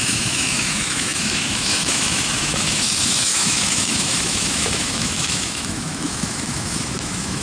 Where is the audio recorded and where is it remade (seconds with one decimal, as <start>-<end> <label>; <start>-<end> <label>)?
0.0-7.4 remade